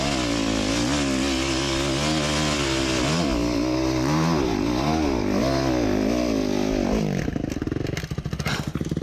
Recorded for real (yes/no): yes